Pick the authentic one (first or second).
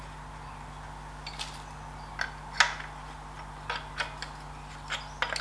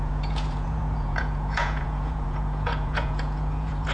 first